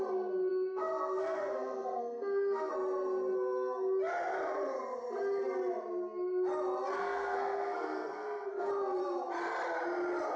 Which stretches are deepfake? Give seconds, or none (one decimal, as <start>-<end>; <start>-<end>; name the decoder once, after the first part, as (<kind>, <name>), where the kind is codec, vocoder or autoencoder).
0.5-2.7 (codec, SNAC); 7.0-8.7